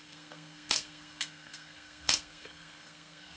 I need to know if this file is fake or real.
fake